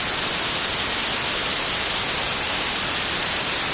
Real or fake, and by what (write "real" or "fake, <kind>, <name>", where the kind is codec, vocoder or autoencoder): real